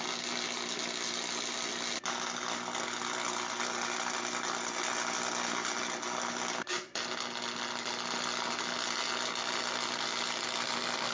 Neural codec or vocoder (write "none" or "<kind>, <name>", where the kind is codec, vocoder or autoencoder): none